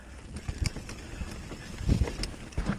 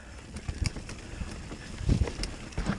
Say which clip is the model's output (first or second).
second